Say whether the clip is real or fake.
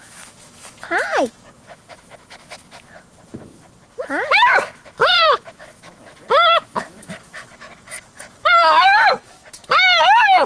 fake